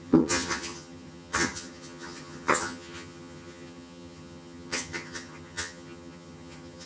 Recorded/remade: remade